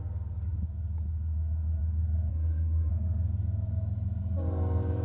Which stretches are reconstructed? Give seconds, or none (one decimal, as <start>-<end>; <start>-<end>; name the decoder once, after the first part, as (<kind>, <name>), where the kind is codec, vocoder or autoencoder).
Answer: 2.3-2.9 (codec, SNAC)